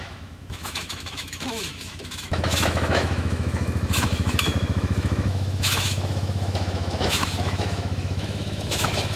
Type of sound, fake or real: fake